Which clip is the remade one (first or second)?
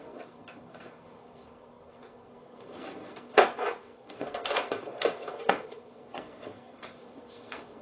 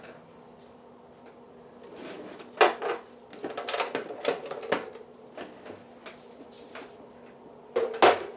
first